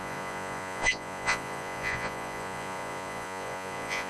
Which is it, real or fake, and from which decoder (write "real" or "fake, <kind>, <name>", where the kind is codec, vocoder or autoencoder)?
fake, vocoder, Vocos